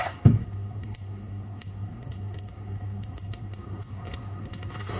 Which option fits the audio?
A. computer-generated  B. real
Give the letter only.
A